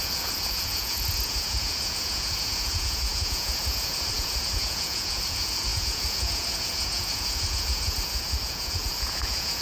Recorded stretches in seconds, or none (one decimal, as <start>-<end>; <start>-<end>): none